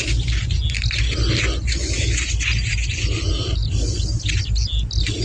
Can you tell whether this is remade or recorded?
recorded